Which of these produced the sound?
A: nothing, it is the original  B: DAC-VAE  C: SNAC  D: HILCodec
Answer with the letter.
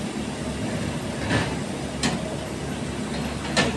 A